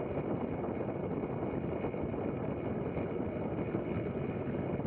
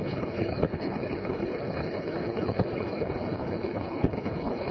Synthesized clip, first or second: second